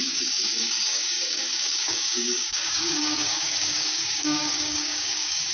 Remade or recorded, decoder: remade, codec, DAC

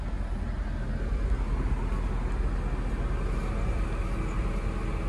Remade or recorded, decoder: recorded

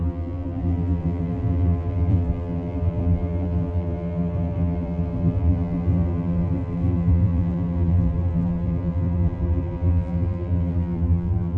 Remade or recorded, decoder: remade, vocoder, BigVGAN v2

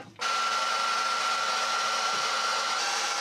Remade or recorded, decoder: recorded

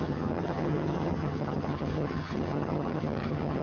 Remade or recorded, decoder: remade, vocoder, HiFi-GAN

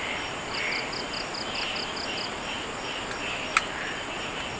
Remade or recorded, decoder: recorded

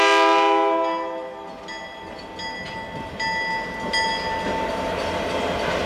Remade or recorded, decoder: recorded